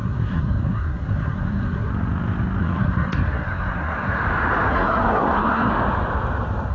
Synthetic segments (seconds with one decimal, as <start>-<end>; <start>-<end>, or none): 0.0-1.9; 2.6-4.2; 4.7-5.7